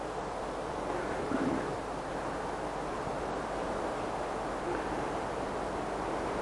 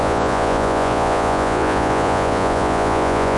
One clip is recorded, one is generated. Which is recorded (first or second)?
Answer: first